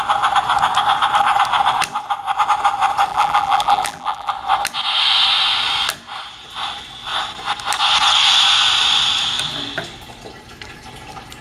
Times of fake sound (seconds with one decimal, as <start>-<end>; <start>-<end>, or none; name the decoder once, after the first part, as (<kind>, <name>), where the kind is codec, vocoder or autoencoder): 3.1-4.3 (vocoder, BigVGAN v2)